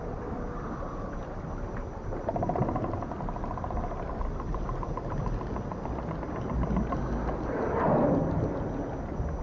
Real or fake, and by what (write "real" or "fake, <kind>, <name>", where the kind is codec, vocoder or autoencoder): real